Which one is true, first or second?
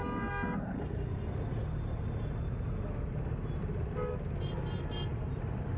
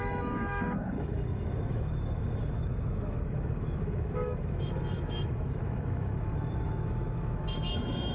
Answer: first